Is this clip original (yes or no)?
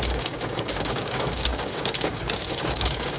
no